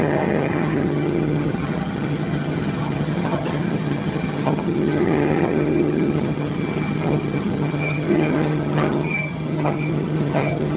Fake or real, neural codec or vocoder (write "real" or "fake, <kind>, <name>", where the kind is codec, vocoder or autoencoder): fake, vocoder, HiFi-GAN